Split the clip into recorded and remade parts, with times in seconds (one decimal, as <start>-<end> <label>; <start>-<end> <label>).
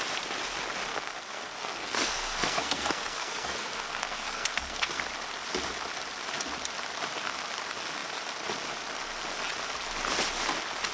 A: 0.0-0.9 recorded; 0.9-5.0 remade; 5.0-10.9 recorded